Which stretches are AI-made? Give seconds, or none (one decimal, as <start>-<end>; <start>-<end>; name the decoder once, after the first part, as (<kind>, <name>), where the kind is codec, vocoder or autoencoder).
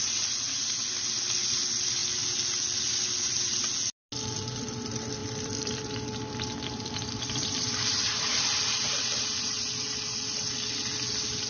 5.2-9.2 (vocoder, BigVGAN v2)